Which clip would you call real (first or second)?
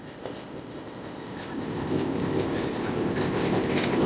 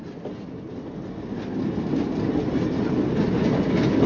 second